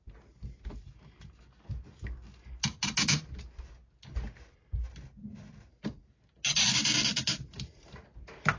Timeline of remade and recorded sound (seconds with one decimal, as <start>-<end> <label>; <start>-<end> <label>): 0.0-8.6 recorded